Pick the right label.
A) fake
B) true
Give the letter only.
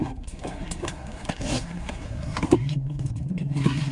A